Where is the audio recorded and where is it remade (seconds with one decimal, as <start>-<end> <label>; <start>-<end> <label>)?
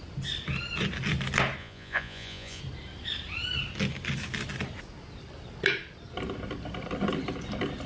0.0-1.6 recorded; 1.6-2.6 remade; 2.6-7.9 recorded